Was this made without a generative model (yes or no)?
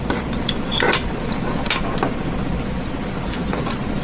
yes